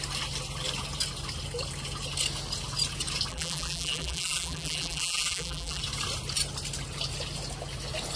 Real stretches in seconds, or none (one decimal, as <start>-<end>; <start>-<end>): 0.0-3.3; 5.8-8.2